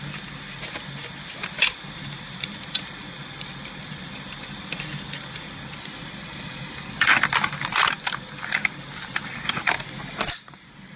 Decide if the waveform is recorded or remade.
recorded